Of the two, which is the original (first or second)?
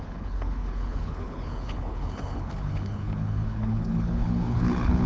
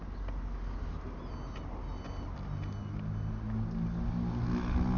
second